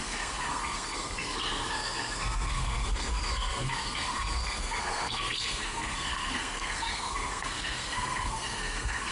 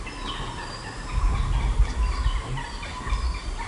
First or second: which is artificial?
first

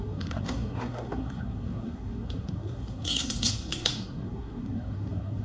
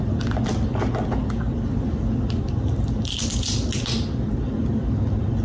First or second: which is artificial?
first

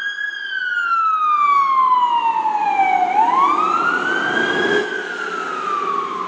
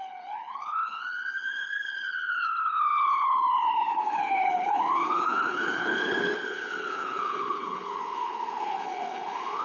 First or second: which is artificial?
second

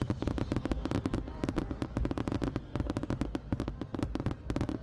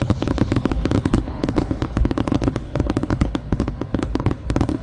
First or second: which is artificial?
second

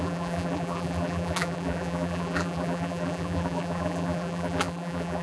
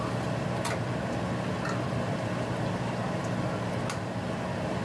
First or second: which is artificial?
first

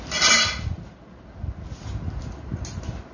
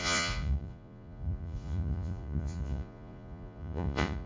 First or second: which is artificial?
second